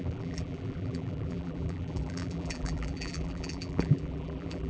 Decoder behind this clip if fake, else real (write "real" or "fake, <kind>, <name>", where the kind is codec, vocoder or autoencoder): fake, vocoder, BigVGAN v2